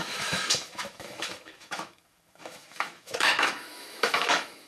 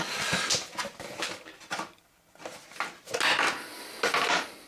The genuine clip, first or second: second